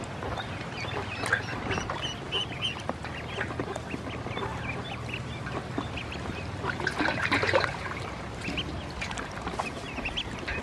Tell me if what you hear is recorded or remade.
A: recorded